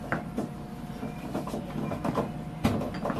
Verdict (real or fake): real